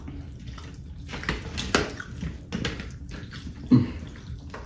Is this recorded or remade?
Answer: recorded